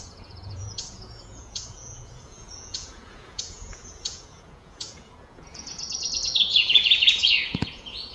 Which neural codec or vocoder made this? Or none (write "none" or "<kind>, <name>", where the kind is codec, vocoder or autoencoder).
vocoder, Vocos